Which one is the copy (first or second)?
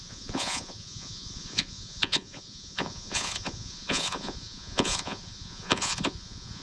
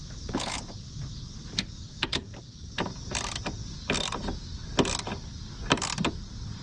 first